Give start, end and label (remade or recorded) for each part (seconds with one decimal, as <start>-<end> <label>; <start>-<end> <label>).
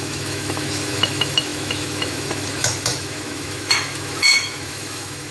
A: 0.0-5.3 remade